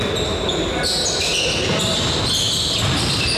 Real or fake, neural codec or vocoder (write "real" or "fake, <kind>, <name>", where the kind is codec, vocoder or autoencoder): real